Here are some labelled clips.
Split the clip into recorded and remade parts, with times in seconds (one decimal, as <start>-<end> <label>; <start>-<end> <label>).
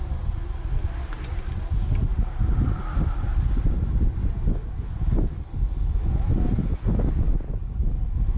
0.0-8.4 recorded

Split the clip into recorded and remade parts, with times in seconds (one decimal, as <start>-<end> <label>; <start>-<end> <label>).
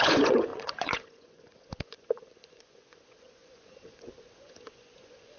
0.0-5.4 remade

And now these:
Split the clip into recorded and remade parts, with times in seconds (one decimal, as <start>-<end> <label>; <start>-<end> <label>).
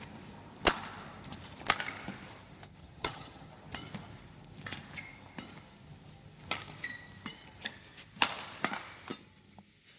0.0-2.8 recorded; 2.8-3.5 remade; 3.5-10.0 recorded